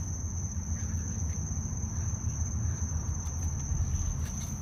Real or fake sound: real